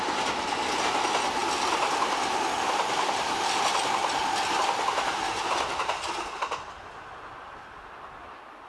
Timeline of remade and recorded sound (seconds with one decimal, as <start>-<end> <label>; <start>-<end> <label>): 0.0-8.7 recorded